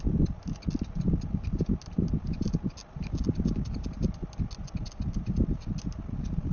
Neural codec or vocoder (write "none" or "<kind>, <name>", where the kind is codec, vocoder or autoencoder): none